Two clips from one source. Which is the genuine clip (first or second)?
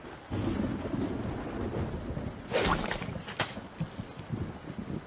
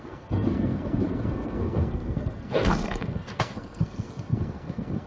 first